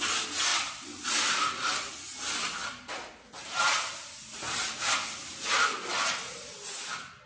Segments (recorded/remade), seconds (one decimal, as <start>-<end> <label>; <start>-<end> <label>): 0.0-0.5 recorded; 0.5-1.9 remade; 1.9-2.6 recorded; 2.6-4.9 remade; 4.9-7.3 recorded